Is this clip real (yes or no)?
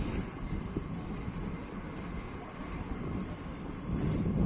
no